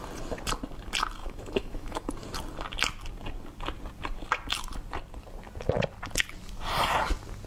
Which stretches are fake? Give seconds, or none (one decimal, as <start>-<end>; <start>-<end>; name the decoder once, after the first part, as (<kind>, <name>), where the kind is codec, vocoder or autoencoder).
1.2-2.1 (autoencoder, DAC-VAE)

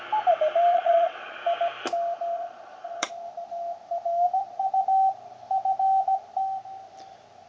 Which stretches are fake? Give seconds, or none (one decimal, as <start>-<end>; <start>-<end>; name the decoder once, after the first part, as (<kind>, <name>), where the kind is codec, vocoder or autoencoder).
0.7-1.4 (vocoder, Vocos); 2.3-3.1

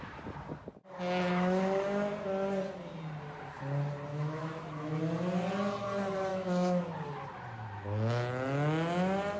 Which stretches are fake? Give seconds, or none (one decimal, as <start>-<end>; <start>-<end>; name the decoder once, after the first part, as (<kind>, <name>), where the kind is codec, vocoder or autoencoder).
4.1-5.0 (autoencoder, DAC-VAE); 6.3-6.8

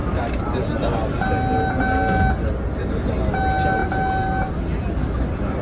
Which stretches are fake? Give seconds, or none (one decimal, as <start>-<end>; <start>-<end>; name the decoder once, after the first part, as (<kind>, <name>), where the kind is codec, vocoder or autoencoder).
none

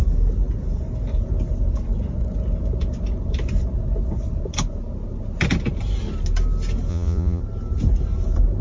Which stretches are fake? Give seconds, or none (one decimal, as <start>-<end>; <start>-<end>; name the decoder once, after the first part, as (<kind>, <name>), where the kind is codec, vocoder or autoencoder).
6.9-7.4 (vocoder, Vocos)

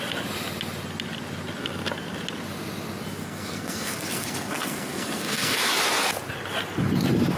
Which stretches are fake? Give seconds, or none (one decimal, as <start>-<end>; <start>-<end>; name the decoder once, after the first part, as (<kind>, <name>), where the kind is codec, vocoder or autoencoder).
3.2-5.7 (codec, SNAC)

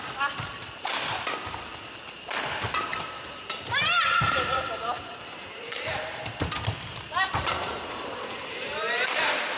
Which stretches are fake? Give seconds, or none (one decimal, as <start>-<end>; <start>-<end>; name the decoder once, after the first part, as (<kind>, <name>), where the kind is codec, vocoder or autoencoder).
0.0-0.9 (vocoder, BigVGAN v2); 1.6-9.6